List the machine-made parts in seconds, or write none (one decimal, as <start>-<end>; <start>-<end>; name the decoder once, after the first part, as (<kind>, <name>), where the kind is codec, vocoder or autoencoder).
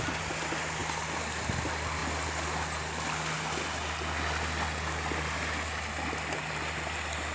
none